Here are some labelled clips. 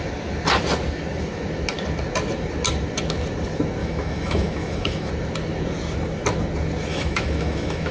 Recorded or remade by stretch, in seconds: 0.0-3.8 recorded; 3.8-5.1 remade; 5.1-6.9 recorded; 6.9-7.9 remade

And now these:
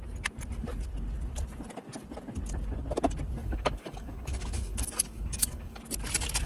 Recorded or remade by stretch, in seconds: 0.0-3.4 recorded; 3.4-5.8 remade; 5.8-6.5 recorded